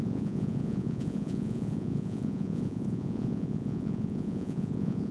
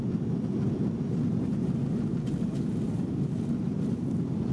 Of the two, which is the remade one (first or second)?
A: first